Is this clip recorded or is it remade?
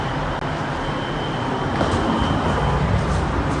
recorded